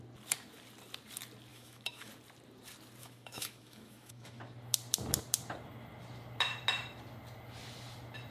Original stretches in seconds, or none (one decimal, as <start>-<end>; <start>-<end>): 0.0-1.5; 2.1-3.0; 4.4-8.3